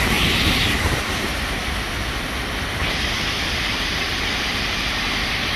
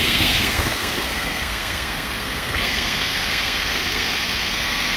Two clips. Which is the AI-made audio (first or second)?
second